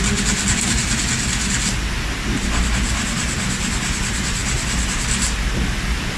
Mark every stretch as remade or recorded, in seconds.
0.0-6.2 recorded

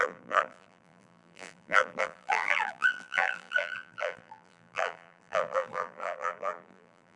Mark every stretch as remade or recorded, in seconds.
0.0-7.2 remade

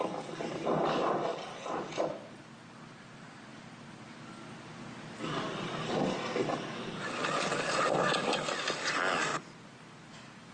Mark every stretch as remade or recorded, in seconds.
0.0-1.3 recorded; 1.3-2.9 remade; 2.9-9.3 recorded; 9.3-10.5 remade

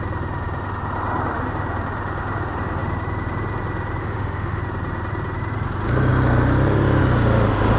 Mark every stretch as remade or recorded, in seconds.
0.0-4.0 recorded; 4.0-4.6 remade; 4.6-7.8 recorded

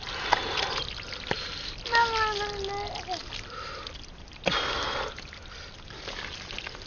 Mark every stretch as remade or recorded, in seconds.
0.0-6.9 recorded

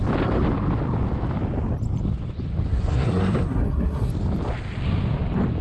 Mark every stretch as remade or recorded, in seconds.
0.0-2.7 recorded; 2.7-4.1 remade; 4.1-5.6 recorded